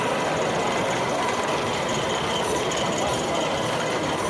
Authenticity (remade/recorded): recorded